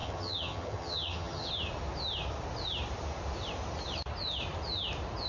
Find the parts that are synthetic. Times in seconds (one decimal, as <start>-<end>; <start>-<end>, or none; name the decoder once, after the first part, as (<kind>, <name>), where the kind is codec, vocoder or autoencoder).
0.0-1.5 (vocoder, HiFi-GAN)

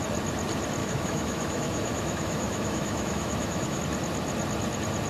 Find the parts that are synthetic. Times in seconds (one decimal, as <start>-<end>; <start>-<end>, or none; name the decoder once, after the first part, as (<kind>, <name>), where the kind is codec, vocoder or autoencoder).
0.8-3.8 (autoencoder, DAC-VAE)

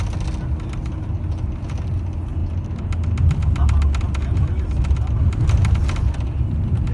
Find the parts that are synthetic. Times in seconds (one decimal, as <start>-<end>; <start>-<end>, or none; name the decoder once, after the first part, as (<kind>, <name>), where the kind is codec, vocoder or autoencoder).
none

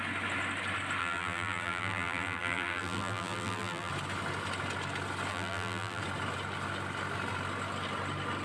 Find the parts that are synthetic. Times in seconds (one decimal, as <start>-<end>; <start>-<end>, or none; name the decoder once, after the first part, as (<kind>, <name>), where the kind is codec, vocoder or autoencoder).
1.0-3.9 (vocoder, BigVGAN v2); 5.3-6.0